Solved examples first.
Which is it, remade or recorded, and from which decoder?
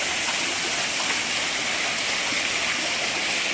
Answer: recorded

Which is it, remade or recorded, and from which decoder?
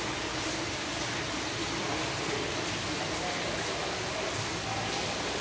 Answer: recorded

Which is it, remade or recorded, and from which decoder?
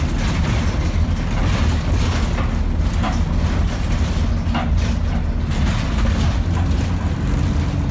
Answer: recorded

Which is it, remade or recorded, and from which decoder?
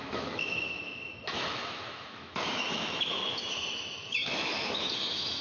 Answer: remade, autoencoder, DAC-VAE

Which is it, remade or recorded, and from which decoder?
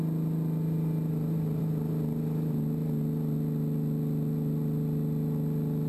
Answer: recorded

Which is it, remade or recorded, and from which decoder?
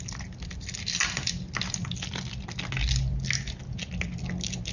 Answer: recorded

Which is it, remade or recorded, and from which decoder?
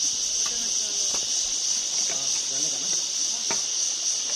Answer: recorded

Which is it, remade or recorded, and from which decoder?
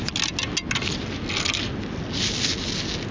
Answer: recorded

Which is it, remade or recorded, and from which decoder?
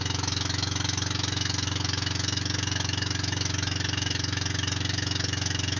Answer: remade, autoencoder, DAC-VAE